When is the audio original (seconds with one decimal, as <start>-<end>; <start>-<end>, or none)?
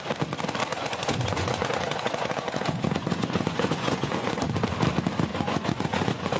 0.0-0.7; 4.5-5.3